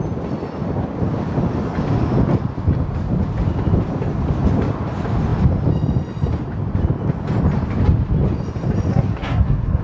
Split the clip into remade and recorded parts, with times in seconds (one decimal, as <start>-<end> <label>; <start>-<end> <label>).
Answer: 0.0-8.9 recorded; 8.9-9.8 remade